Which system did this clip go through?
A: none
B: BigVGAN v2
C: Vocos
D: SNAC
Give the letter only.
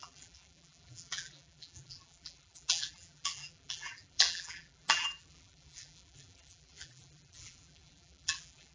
B